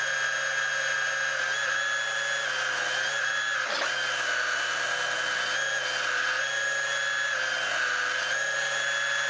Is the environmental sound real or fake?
real